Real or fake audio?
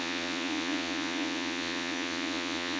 fake